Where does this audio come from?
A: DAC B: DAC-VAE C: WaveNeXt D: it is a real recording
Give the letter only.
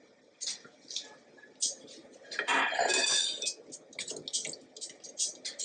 D